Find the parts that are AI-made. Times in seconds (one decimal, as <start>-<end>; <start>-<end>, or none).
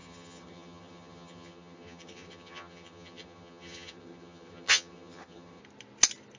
0.0-5.6